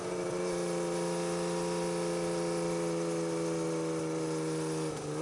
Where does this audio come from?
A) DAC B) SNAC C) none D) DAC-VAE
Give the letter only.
C